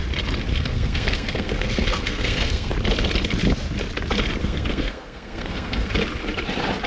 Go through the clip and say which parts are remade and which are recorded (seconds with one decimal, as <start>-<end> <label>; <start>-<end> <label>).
0.0-0.5 recorded; 0.5-2.7 remade; 2.7-4.4 recorded; 4.4-5.9 remade; 5.9-6.9 recorded